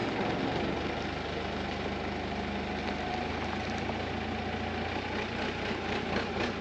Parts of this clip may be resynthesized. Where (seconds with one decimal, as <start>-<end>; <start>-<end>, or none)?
none